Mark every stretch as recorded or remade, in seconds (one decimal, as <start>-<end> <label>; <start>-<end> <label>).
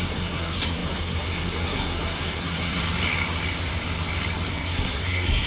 0.0-2.8 remade; 2.8-4.5 recorded; 4.5-5.5 remade